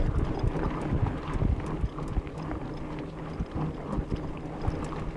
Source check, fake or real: real